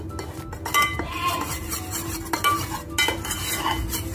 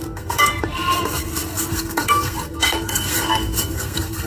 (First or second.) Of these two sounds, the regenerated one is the second